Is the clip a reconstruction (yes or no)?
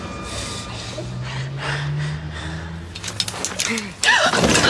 no